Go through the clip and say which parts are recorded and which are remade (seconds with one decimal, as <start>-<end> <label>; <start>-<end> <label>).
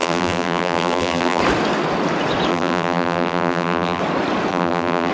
0.0-1.4 remade; 1.4-2.5 recorded; 2.5-4.0 remade; 4.0-4.5 recorded; 4.5-5.1 remade